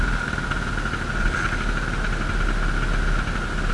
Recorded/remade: recorded